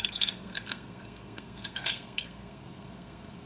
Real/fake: fake